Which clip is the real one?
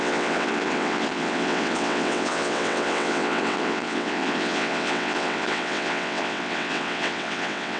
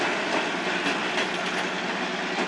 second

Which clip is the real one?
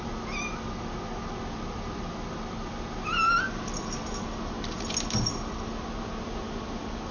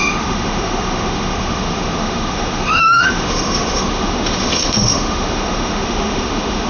first